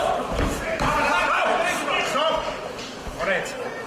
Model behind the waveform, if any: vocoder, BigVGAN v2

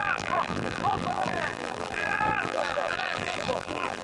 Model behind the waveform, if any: vocoder, BigVGAN v2